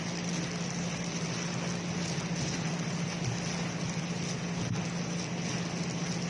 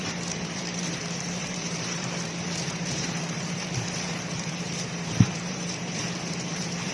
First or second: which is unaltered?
first